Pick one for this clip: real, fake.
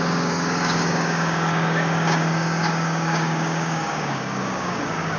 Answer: fake